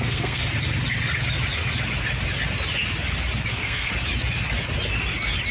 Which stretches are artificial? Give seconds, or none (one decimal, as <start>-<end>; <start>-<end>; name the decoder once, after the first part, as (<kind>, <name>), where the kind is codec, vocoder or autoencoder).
0.0-0.4 (codec, SNAC); 3.5-3.9